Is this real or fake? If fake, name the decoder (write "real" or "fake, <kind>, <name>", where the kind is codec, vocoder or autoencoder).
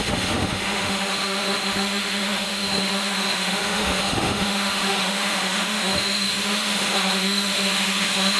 fake, autoencoder, DAC-VAE